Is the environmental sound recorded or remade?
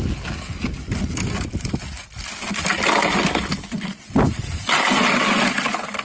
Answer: recorded